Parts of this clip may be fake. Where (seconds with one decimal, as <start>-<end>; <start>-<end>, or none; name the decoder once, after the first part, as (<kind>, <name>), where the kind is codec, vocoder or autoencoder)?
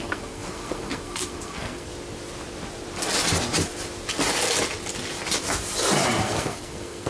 0.0-1.9 (codec, SNAC); 6.2-7.1